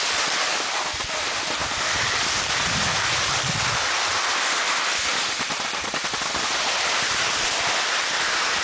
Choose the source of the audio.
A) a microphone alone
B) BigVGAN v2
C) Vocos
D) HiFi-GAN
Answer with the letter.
A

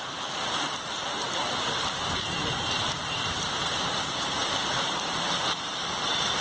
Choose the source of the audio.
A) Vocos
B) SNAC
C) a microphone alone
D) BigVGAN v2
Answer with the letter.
D